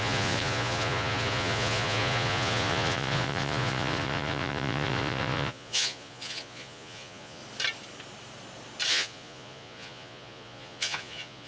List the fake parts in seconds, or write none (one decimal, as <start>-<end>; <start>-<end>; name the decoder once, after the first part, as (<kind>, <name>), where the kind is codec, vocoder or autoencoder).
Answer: 0.0-7.4 (vocoder, Vocos); 8.9-11.5